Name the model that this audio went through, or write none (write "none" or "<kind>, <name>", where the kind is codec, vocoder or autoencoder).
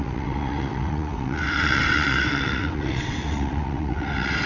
vocoder, WaveNeXt